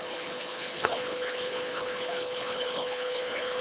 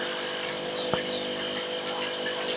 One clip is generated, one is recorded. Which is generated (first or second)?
first